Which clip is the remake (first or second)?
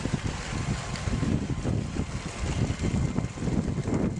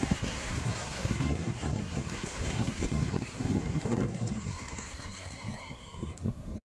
second